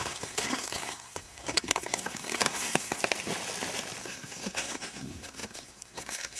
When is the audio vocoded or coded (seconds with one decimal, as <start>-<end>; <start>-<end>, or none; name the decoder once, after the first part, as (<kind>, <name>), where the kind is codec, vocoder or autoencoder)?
0.0-3.0 (codec, SNAC); 4.0-6.4